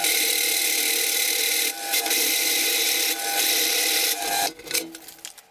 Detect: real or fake real